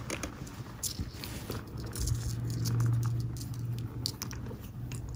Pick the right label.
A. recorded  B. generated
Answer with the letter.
A